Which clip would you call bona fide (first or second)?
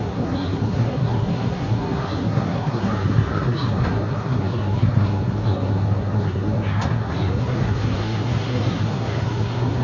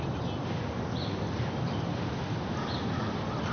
second